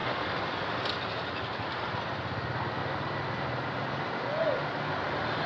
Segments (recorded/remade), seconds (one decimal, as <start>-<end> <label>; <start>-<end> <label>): 0.0-5.5 recorded